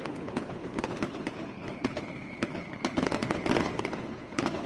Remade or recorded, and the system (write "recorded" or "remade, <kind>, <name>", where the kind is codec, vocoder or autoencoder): remade, codec, HILCodec